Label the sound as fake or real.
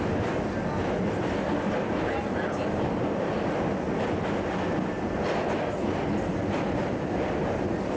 real